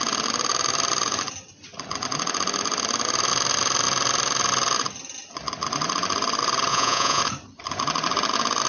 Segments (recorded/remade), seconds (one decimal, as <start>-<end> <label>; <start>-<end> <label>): 0.0-6.7 recorded; 6.7-7.2 remade; 7.2-8.7 recorded